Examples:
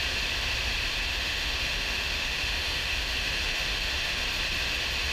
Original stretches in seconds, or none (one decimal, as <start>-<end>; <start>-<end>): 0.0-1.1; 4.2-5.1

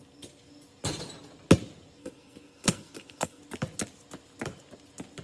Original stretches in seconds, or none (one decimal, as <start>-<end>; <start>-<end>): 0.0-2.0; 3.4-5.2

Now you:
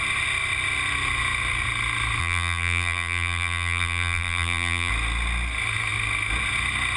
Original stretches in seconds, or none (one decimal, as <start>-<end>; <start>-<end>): 0.0-2.2; 4.9-7.0

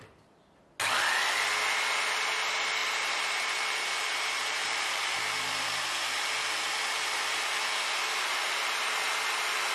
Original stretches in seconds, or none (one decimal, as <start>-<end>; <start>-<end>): 0.0-2.8; 5.2-8.0; 9.0-9.7

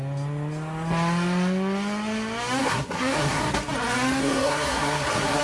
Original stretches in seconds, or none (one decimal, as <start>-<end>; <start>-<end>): 0.0-2.6; 3.4-4.2

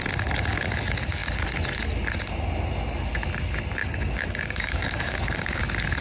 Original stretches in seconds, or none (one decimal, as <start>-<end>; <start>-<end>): 0.0-3.8; 5.6-6.0